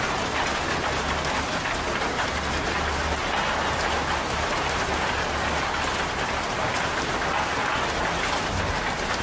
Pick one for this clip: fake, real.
real